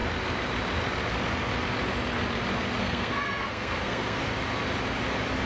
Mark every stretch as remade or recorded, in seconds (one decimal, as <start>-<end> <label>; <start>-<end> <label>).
0.0-2.8 recorded; 2.8-4.2 remade; 4.2-5.5 recorded